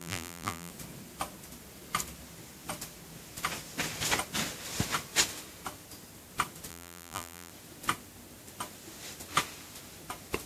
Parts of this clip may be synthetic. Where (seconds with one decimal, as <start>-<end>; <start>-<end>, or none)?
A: 0.0-0.7; 6.7-7.5